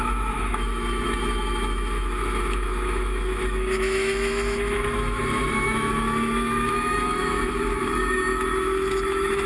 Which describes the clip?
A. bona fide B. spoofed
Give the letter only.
B